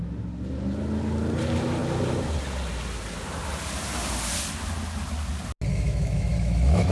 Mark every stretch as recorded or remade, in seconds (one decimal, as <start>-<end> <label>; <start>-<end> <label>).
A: 0.0-5.7 recorded; 5.7-6.9 remade